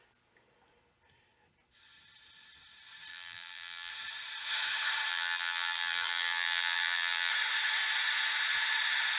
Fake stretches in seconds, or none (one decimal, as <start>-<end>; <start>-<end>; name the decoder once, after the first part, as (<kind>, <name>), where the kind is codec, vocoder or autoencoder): 3.1-3.9 (vocoder, BigVGAN v2); 5.1-7.3